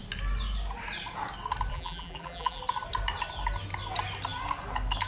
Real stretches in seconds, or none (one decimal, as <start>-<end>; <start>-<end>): 0.0-1.7; 2.6-5.1